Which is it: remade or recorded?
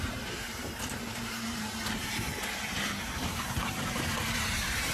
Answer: remade